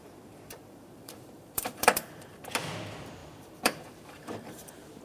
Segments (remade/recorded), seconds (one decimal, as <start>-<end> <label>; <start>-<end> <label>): 0.0-2.5 remade; 2.5-3.2 recorded; 3.2-5.0 remade

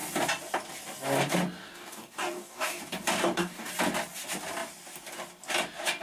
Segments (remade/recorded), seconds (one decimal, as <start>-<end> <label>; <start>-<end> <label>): 0.0-1.6 recorded; 1.6-2.8 remade; 2.8-3.2 recorded; 3.2-3.7 remade; 3.7-6.0 recorded

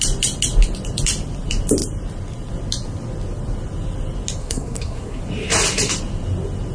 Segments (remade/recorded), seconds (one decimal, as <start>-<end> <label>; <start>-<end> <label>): 0.0-4.4 recorded; 4.4-5.2 remade; 5.2-6.7 recorded

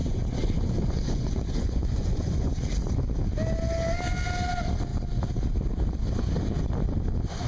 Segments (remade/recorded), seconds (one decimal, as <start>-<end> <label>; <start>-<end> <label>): 0.0-2.5 remade; 2.5-7.5 recorded

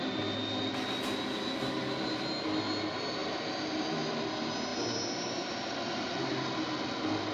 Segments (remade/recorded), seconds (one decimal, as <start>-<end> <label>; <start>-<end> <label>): 0.0-3.2 recorded; 3.2-4.2 remade; 4.2-4.7 recorded; 4.7-6.0 remade; 6.0-7.3 recorded

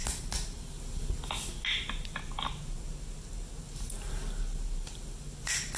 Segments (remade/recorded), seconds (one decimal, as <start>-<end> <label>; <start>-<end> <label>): 0.0-5.8 recorded

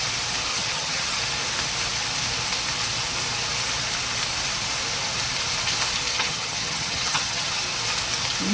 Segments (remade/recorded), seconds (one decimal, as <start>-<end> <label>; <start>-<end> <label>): 0.0-0.5 recorded; 0.5-1.2 remade; 1.2-6.1 recorded; 6.1-7.6 remade; 7.6-8.5 recorded